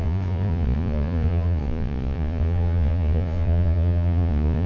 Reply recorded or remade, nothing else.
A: remade